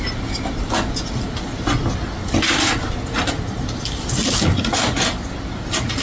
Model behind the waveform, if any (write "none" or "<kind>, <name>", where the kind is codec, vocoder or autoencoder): none